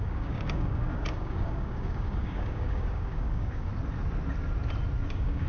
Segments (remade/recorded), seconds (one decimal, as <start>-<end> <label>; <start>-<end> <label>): 0.0-3.7 remade; 3.7-5.1 recorded; 5.1-5.5 remade